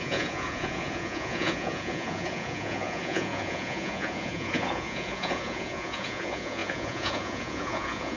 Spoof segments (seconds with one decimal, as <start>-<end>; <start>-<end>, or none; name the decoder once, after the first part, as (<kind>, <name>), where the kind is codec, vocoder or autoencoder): 0.0-8.2 (vocoder, Vocos)